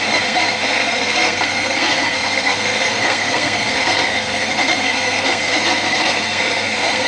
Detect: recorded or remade remade